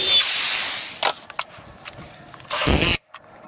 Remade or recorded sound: recorded